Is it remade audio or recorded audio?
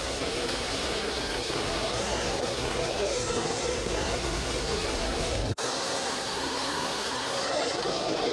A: remade